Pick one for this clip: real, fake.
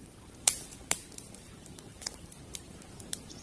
fake